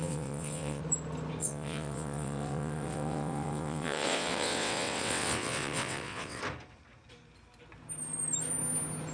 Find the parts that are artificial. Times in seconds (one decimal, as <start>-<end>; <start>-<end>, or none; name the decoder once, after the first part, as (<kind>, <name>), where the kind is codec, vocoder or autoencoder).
0.0-0.8 (vocoder, WaveNeXt); 1.4-6.4